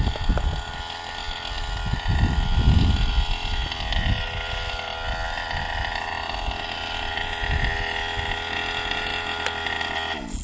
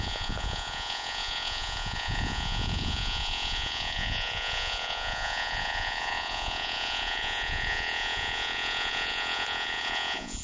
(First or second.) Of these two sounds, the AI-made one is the second